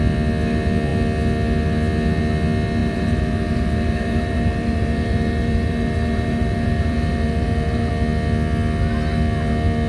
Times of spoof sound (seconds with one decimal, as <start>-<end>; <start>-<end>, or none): 2.8-7.9